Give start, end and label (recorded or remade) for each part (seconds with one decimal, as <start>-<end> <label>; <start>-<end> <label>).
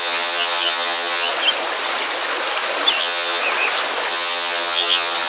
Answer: 0.0-1.3 remade; 1.3-3.0 recorded; 3.0-3.4 remade; 3.4-4.1 recorded; 4.1-5.3 remade